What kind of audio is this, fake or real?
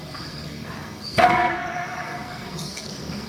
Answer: fake